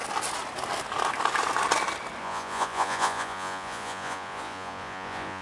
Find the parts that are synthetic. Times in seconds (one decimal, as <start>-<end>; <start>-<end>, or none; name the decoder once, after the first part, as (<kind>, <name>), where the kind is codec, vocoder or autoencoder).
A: 2.2-5.4 (vocoder, Vocos)